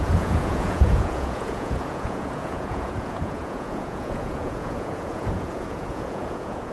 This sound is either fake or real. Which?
fake